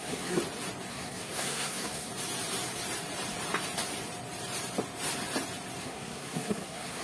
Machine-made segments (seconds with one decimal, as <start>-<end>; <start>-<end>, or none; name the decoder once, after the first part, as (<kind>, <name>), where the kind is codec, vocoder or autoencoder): 0.0-0.4 (codec, SNAC); 0.9-2.1; 5.8-7.0

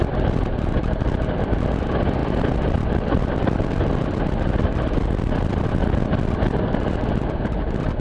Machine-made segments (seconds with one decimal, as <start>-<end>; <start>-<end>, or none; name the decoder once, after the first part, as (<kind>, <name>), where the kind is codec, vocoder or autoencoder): none

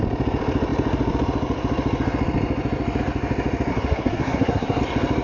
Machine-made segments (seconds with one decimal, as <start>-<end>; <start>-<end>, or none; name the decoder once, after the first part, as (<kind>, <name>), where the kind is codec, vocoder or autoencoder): 3.7-4.8 (codec, SNAC)

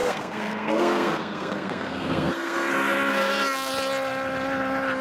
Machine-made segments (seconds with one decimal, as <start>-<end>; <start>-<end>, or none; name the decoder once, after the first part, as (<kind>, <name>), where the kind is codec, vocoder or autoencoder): 0.0-2.7 (codec, SNAC); 3.1-3.7